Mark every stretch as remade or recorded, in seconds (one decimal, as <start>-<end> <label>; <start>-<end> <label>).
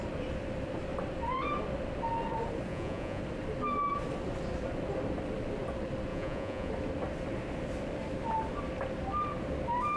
0.0-2.7 recorded; 2.7-3.2 remade; 3.2-6.1 recorded; 6.1-6.7 remade; 6.7-10.0 recorded